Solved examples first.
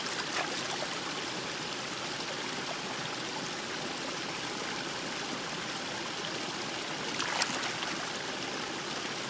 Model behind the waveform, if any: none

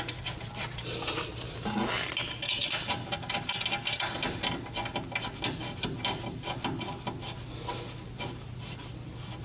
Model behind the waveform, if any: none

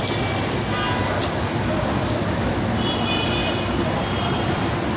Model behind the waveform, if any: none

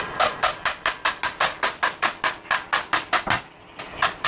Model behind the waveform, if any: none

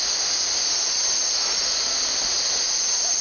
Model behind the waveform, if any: none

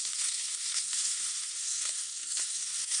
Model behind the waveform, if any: codec, SNAC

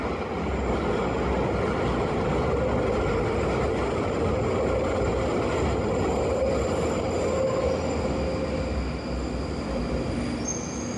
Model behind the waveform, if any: none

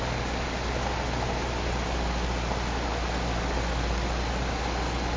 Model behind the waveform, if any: none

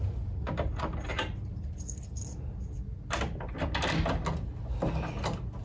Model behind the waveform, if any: none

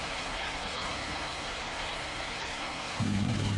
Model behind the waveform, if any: codec, SNAC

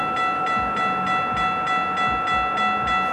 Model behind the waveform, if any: none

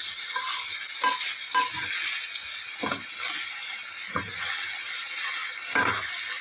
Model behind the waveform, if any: none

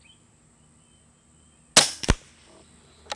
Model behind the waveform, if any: none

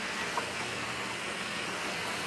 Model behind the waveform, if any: codec, SNAC